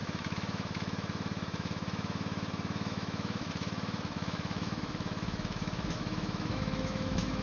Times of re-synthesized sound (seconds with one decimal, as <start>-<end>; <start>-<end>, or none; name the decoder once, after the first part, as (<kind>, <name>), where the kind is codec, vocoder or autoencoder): 0.0-7.4 (autoencoder, DAC-VAE)

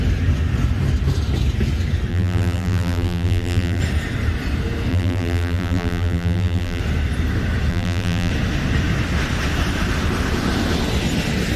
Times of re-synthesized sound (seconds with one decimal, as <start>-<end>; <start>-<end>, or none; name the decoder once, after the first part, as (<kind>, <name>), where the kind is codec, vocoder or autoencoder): 2.1-3.8 (vocoder, BigVGAN v2); 4.9-6.8; 7.7-8.3

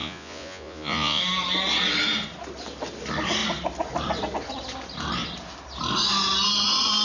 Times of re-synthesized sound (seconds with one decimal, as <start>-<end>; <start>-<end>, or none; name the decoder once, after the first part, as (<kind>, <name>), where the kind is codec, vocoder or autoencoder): 0.0-1.2 (vocoder, Vocos)

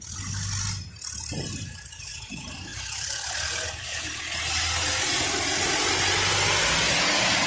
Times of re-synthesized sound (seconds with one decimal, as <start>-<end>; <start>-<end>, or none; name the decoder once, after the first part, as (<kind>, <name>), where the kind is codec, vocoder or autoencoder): none

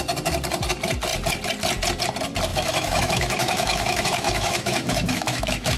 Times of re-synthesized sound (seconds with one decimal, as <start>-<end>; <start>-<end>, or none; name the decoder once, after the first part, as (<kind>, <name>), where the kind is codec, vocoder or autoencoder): 2.5-5.8 (autoencoder, DAC-VAE)

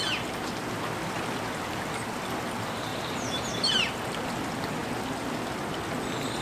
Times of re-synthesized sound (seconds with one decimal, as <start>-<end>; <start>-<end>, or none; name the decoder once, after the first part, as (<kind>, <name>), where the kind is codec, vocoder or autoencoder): 2.9-3.5 (vocoder, BigVGAN v2)

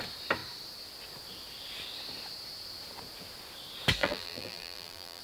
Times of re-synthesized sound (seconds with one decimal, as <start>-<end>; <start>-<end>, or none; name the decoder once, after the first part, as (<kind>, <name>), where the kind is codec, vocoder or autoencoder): 4.0-5.2 (vocoder, BigVGAN v2)

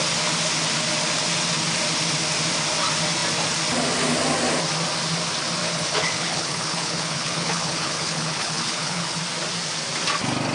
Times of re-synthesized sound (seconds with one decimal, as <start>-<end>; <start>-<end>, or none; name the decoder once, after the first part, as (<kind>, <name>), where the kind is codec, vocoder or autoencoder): 5.6-9.2 (codec, HILCodec)